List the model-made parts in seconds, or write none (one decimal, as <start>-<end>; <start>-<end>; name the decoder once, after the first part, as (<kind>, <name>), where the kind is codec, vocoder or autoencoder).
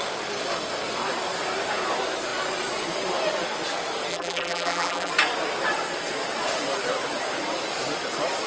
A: 4.1-5.1 (vocoder, BigVGAN v2)